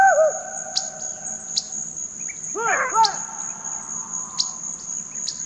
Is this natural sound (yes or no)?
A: yes